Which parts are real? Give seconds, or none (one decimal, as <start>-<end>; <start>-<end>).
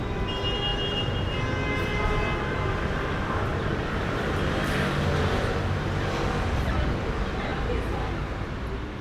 0.0-0.7; 1.4-3.5; 4.6-9.0